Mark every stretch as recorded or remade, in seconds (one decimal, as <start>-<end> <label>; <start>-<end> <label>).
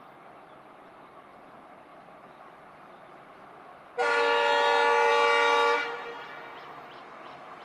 0.0-7.6 recorded